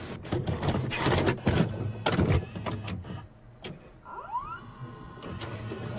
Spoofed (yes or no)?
no